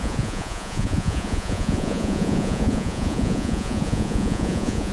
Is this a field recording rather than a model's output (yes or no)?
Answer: no